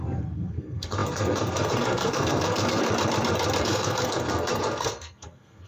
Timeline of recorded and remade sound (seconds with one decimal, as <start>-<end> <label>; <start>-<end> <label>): 0.0-2.8 remade; 2.8-3.6 recorded; 3.6-5.7 remade